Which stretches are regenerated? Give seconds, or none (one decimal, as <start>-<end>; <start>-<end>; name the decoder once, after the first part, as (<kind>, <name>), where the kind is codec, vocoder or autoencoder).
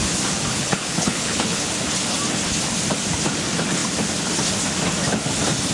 0.5-1.7 (codec, HILCodec)